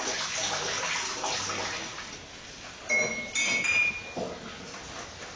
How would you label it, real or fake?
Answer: real